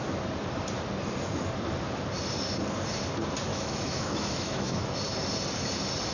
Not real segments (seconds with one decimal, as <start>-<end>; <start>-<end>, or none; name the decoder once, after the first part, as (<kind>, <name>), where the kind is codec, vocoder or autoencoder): 3.5-5.0 (autoencoder, DAC-VAE)